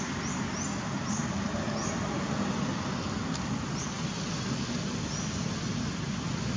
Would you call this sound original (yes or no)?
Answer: yes